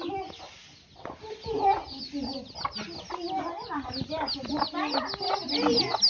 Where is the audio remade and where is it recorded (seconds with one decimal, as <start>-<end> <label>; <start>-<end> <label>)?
0.0-6.1 recorded